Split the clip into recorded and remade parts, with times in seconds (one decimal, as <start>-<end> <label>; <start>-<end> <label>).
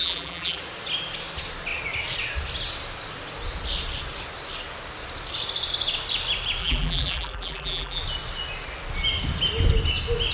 0.0-0.6 remade; 0.6-6.6 recorded; 6.6-8.0 remade; 8.0-10.3 recorded